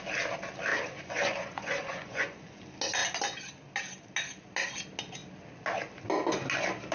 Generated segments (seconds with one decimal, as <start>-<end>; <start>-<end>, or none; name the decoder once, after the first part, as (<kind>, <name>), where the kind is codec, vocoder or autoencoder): 0.7-2.6 (vocoder, Vocos)